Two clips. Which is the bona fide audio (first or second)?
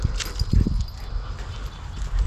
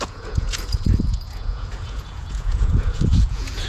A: first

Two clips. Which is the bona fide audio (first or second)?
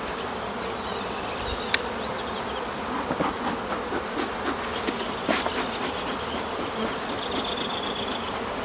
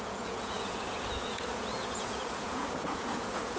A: first